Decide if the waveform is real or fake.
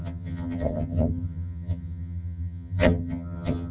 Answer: fake